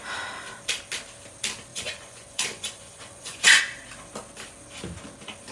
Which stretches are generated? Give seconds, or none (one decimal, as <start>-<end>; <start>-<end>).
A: 1.7-3.6